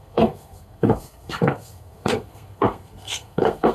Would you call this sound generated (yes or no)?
yes